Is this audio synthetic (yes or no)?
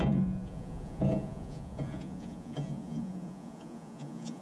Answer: yes